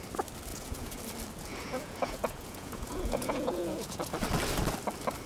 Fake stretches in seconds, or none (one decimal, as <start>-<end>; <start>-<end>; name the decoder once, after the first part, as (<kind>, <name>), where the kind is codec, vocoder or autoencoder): 0.5-1.0 (vocoder, Vocos); 1.5-4.0